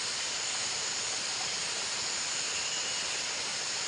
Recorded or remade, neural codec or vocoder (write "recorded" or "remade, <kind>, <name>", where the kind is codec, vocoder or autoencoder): recorded